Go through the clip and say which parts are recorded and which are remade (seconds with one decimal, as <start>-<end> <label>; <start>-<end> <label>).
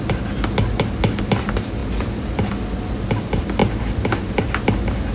0.0-3.6 recorded; 3.6-4.3 remade; 4.3-5.1 recorded